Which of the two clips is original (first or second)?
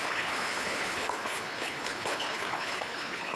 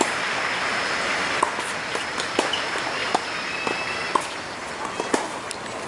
second